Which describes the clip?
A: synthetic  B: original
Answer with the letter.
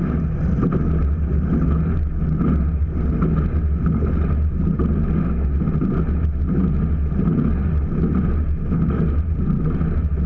B